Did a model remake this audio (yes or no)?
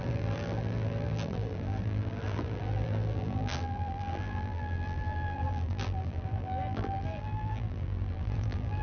yes